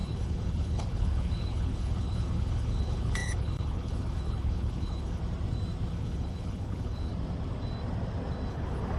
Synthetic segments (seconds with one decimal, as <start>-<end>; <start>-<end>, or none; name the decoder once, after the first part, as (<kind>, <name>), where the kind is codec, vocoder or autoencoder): 0.0-5.2 (codec, HILCodec); 5.9-7.1; 8.5-9.0